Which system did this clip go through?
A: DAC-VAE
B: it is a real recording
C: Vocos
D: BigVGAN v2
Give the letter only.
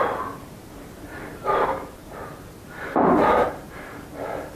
D